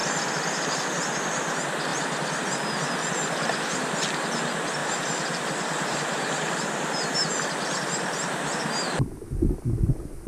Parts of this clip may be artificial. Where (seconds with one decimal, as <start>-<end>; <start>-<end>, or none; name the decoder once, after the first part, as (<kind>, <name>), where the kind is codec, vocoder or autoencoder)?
0.0-1.1 (vocoder, BigVGAN v2); 1.9-3.1; 4.8-7.3